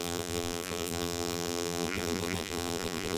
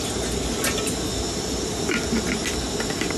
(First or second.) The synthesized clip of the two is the first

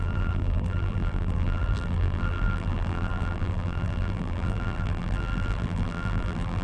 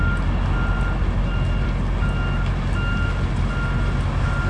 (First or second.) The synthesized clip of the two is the first